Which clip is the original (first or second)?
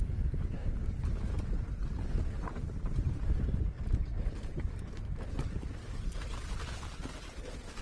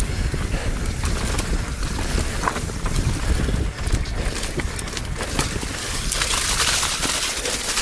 second